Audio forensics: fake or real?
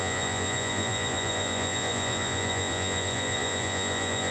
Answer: fake